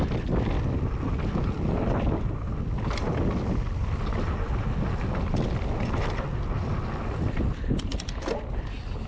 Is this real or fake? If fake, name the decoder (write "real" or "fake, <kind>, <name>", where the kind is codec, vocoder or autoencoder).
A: real